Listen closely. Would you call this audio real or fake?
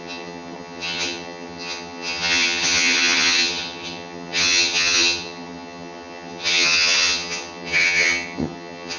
fake